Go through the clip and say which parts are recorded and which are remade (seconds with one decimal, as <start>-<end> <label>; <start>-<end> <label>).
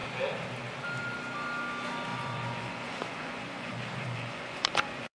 0.0-2.1 recorded; 2.1-5.2 remade